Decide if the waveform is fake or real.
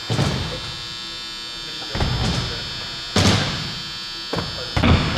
real